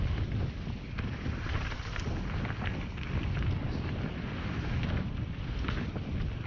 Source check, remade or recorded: recorded